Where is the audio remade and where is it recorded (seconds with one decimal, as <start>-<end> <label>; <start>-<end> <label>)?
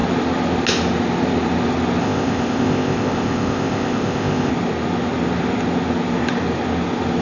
0.0-2.0 recorded; 2.0-4.5 remade; 4.5-7.2 recorded